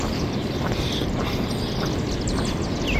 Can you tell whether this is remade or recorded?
recorded